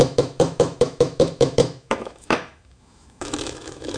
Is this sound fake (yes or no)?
yes